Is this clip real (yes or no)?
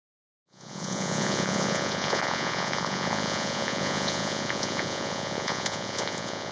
no